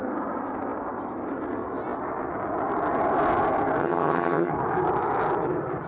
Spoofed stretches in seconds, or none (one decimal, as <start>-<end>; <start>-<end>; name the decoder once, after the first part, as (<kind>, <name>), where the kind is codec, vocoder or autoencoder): 3.8-4.5 (vocoder, HiFi-GAN)

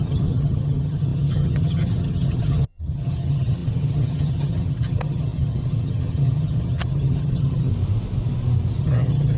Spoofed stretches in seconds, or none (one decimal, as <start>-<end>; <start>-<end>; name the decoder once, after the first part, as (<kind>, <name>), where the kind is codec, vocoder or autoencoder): 0.0-7.7 (vocoder, HiFi-GAN); 8.8-9.4

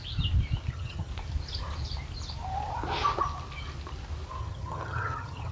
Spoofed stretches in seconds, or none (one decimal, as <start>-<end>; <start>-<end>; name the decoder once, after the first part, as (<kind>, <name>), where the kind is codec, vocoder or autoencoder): 0.7-1.1 (vocoder, HiFi-GAN); 4.4-5.5

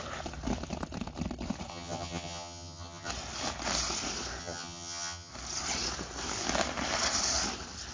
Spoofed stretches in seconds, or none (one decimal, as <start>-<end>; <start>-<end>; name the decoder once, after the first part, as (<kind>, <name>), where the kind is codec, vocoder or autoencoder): 1.7-3.1 (vocoder, HiFi-GAN); 4.4-5.3